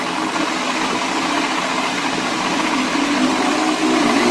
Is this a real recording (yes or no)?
yes